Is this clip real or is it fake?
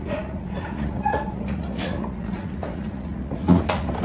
fake